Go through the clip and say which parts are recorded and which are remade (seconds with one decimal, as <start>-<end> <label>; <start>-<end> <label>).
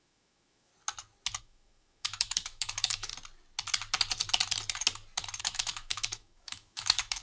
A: 0.0-0.7 remade; 0.7-1.4 recorded; 1.4-3.1 remade; 3.1-5.4 recorded; 5.4-7.2 remade